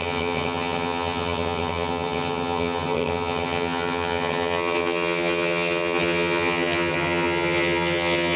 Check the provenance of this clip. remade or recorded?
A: remade